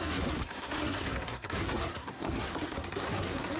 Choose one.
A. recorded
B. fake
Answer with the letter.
B